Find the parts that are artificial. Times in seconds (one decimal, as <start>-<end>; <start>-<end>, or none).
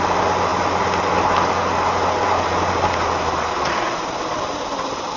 0.5-1.1